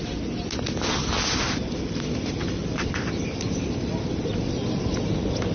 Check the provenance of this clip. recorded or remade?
recorded